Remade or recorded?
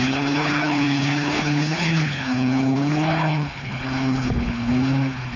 remade